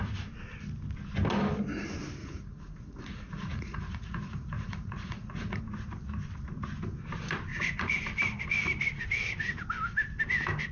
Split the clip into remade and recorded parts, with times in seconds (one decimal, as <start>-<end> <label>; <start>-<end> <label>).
0.0-2.2 recorded; 2.2-5.6 remade; 5.6-7.5 recorded; 7.5-8.0 remade; 8.0-10.7 recorded